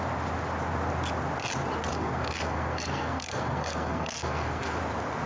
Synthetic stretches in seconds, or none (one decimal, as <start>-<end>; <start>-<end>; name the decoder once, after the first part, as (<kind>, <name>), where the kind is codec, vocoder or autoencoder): 1.9-4.8 (codec, SNAC)